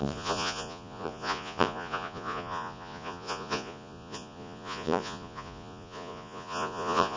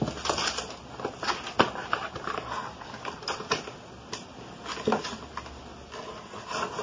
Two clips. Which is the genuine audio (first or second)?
second